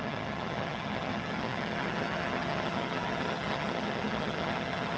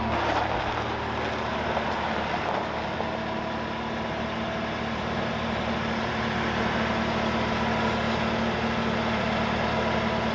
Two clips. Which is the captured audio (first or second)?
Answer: second